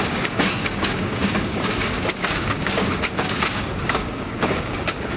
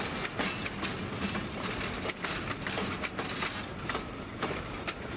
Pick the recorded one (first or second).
second